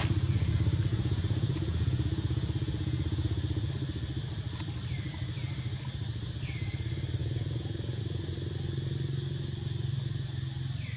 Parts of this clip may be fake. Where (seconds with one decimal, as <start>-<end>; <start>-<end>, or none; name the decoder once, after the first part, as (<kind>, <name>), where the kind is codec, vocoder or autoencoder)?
0.9-3.7 (vocoder, Vocos); 7.2-8.0